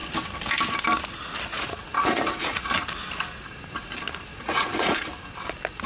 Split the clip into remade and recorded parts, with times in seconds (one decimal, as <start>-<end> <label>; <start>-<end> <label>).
0.0-1.5 recorded; 1.5-2.6 remade; 2.6-4.3 recorded; 4.3-5.1 remade; 5.1-5.9 recorded